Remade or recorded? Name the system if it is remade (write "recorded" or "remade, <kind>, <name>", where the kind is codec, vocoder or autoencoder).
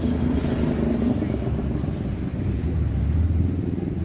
recorded